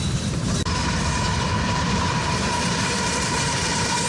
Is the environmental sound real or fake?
fake